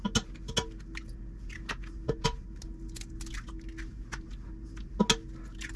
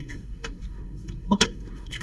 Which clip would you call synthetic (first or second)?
second